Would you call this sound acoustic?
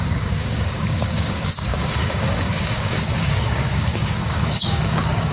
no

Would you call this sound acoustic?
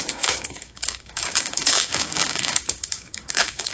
no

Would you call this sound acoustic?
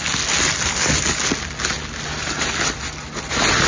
yes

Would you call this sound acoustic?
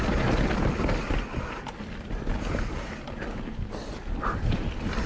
yes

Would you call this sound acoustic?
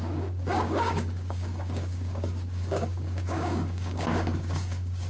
no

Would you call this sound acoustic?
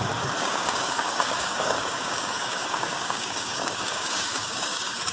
no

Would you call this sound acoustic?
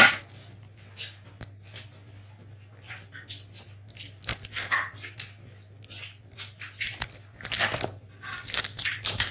yes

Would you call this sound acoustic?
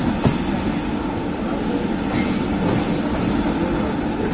yes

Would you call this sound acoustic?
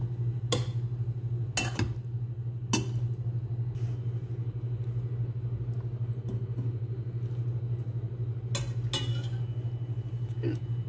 yes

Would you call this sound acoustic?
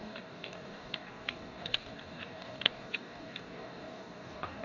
no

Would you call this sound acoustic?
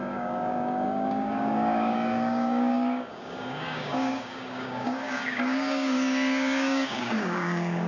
no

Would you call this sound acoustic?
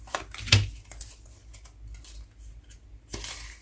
yes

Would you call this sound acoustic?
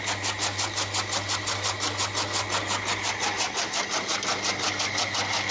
yes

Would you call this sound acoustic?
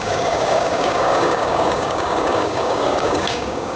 no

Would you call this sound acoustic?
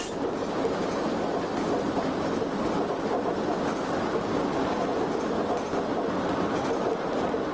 yes